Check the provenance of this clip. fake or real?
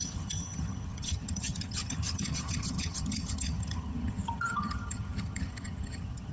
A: fake